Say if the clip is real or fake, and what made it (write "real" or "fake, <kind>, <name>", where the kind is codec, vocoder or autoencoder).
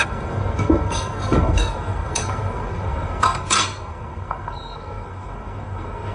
fake, codec, SNAC